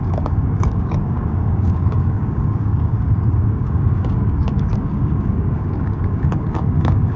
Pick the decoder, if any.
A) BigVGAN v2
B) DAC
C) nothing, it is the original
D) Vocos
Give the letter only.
B